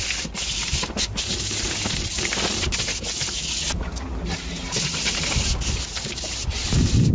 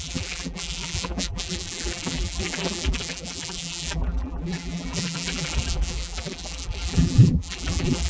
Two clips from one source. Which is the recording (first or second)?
first